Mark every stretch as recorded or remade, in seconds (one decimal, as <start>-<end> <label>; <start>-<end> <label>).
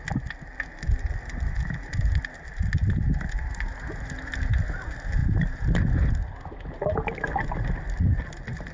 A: 0.0-8.7 recorded